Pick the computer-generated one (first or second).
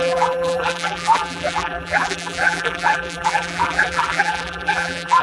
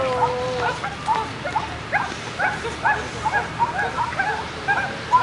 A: first